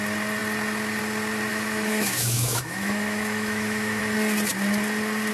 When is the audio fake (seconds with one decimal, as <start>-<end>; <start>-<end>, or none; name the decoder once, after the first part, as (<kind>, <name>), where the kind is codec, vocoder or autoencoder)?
1.5-4.0 (autoencoder, DAC-VAE)